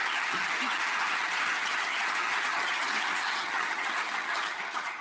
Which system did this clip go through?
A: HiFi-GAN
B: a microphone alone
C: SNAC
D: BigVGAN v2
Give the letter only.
A